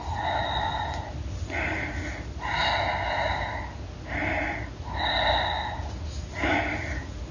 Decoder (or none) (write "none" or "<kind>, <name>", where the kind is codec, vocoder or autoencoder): none